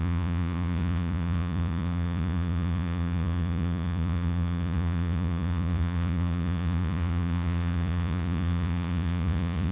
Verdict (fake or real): fake